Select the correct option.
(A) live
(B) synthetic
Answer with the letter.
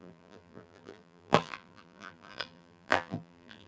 B